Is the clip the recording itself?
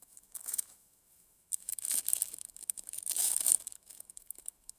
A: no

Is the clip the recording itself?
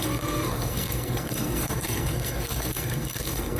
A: no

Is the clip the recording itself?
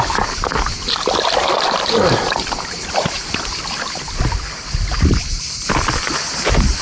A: yes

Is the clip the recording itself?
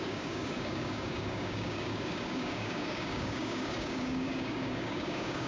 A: no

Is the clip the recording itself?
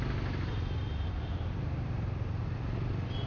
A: yes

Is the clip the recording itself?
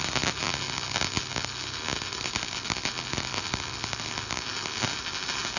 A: yes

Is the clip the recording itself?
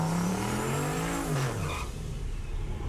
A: no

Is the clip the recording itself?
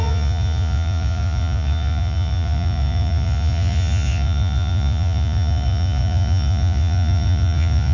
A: no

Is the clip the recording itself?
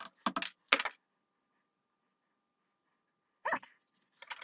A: yes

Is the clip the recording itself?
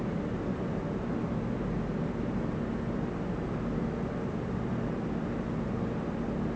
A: yes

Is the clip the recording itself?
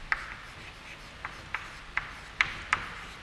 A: yes